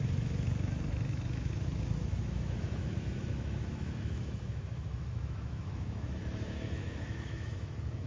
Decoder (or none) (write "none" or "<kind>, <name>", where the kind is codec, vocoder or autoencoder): autoencoder, DAC-VAE